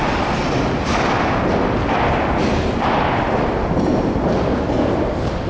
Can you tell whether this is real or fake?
real